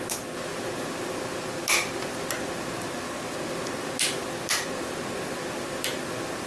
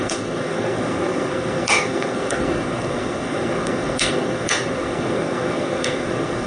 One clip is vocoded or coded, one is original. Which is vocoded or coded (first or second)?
second